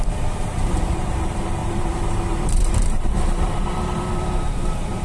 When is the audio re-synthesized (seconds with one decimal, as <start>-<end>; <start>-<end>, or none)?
0.0-5.0